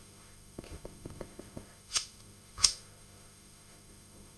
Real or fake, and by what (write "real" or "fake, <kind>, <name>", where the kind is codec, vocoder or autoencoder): fake, autoencoder, DAC-VAE